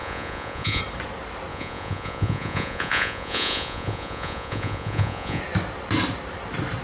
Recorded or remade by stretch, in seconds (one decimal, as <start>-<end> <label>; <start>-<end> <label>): 0.0-0.8 remade; 0.8-1.5 recorded; 1.5-5.4 remade; 5.4-6.8 recorded